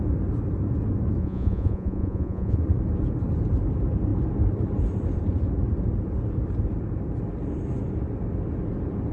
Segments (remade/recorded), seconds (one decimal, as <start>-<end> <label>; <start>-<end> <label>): 0.0-1.2 recorded; 1.2-2.6 remade; 2.6-9.1 recorded